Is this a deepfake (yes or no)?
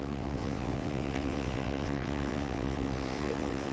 yes